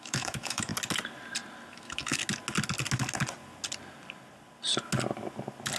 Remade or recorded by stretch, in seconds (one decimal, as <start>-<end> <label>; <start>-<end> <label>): 0.0-0.7 remade; 0.7-1.7 recorded; 1.7-2.2 remade; 2.2-5.8 recorded